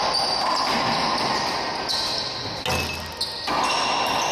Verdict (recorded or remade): recorded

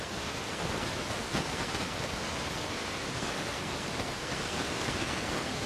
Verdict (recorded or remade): remade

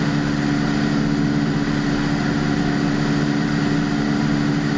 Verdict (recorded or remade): recorded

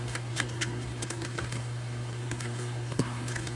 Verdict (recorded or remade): remade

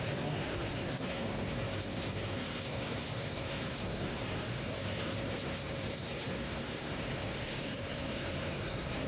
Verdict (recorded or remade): remade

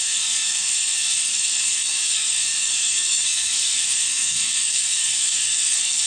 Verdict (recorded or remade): remade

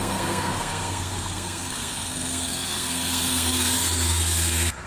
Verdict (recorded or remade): remade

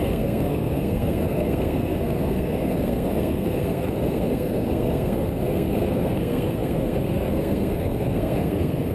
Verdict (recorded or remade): remade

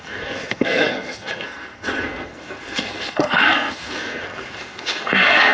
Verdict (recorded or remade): remade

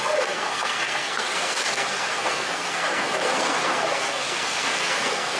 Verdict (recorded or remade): remade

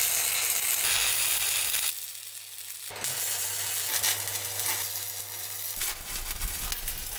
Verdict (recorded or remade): recorded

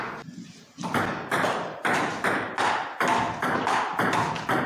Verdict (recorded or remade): recorded